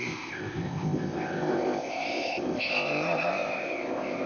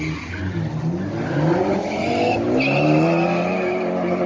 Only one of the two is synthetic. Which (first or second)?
first